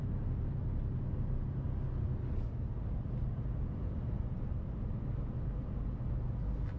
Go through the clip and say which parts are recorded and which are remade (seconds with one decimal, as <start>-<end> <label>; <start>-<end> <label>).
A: 0.0-6.8 recorded